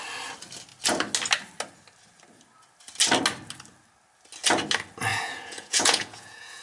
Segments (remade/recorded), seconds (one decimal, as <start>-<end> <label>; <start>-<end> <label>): 0.0-5.1 recorded; 5.1-6.6 remade